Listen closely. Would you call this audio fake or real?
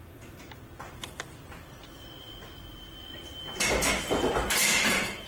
real